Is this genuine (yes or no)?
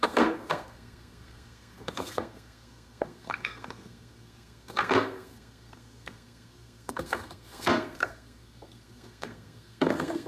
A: no